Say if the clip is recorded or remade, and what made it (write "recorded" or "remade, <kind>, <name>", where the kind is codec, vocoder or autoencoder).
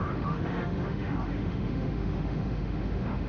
remade, autoencoder, DAC-VAE